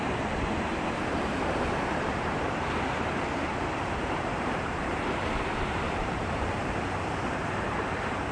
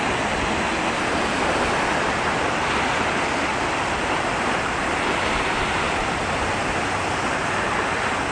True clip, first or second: second